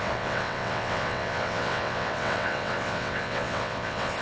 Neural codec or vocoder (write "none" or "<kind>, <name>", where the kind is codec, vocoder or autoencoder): vocoder, WaveNeXt